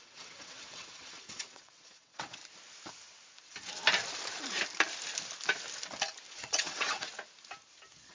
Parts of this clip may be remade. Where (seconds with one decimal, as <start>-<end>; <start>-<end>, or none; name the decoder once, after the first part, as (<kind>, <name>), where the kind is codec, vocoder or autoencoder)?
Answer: 0.0-2.4 (vocoder, WaveNeXt); 6.3-7.1